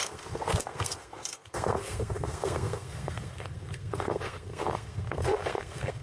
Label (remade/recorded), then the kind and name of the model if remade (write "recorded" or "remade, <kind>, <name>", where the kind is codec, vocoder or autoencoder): remade, codec, SNAC